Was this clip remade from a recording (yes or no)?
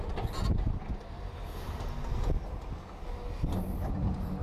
no